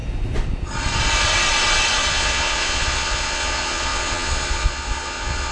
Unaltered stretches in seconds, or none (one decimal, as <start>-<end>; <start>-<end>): 0.0-2.1